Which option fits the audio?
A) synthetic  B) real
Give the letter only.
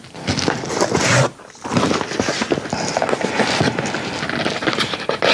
B